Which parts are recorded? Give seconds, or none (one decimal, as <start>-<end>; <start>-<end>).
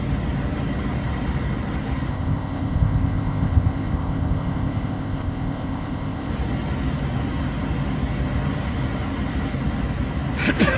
0.0-2.1; 6.3-10.8